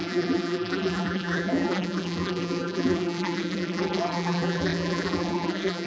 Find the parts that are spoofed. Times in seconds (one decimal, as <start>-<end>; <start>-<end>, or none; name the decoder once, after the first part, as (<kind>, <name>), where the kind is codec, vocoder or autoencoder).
0.0-5.9 (vocoder, BigVGAN v2)